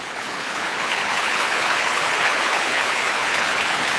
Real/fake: fake